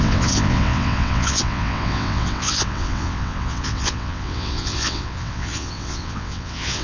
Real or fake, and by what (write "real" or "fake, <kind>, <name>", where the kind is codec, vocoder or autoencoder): fake, vocoder, WaveNeXt